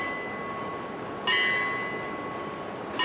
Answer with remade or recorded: recorded